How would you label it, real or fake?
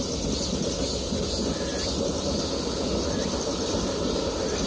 real